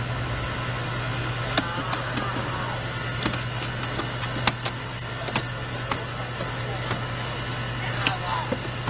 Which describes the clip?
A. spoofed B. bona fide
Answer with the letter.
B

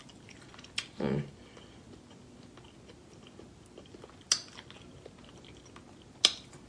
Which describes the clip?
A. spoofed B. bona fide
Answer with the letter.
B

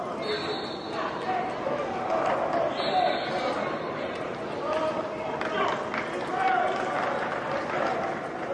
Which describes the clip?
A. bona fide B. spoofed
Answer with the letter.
A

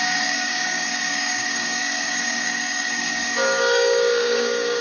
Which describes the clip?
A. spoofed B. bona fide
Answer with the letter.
A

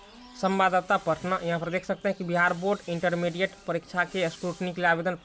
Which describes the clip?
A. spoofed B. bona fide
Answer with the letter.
B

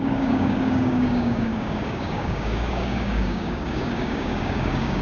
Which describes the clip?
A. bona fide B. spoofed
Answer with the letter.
B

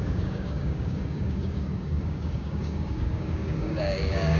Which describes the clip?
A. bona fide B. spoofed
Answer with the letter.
B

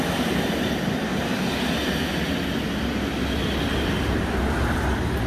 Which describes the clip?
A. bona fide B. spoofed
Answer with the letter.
A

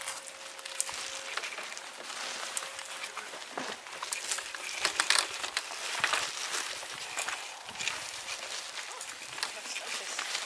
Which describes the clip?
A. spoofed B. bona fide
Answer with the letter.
B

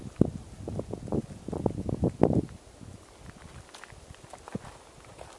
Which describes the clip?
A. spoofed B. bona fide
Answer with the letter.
B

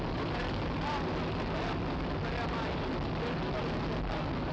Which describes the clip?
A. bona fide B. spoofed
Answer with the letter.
A